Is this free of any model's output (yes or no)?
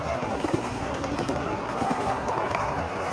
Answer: no